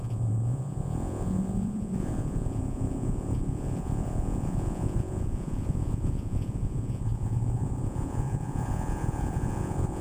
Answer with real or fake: fake